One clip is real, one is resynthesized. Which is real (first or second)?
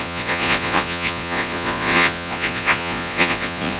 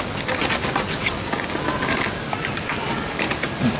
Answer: second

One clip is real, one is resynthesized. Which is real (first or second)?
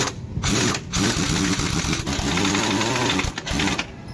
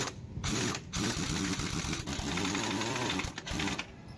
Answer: first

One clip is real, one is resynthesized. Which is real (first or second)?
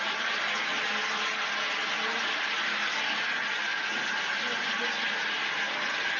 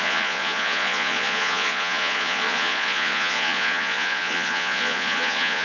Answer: first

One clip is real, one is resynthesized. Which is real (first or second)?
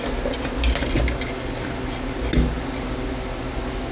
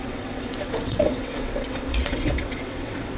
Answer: first